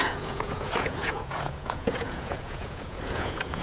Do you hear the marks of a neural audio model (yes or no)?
yes